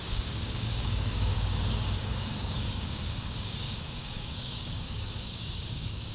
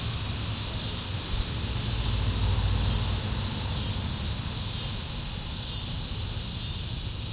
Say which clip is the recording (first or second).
second